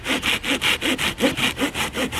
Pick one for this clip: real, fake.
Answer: real